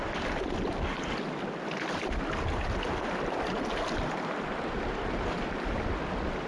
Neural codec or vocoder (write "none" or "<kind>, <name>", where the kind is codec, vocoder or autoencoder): none